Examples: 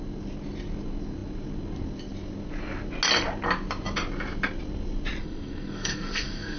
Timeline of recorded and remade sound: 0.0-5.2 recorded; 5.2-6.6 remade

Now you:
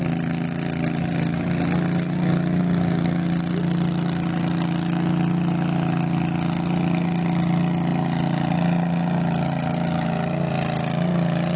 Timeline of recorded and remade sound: 0.0-11.6 recorded

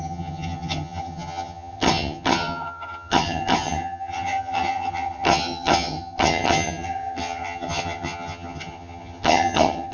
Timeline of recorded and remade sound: 0.0-9.9 remade